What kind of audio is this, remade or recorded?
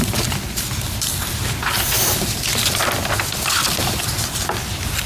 remade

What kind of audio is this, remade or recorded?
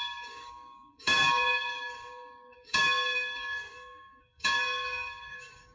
remade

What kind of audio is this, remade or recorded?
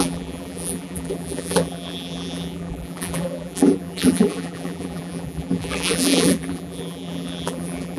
remade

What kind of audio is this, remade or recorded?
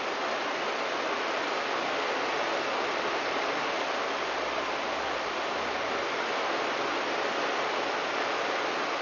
recorded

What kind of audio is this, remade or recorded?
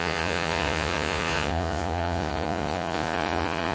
remade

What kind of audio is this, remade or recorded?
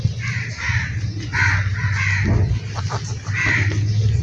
recorded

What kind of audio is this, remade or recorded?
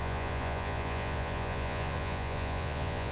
remade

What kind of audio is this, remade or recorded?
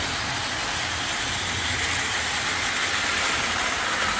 recorded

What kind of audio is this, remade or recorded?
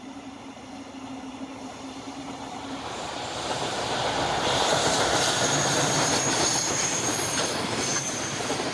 remade